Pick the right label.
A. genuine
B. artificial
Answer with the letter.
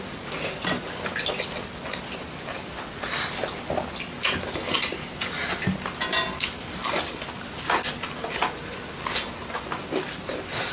A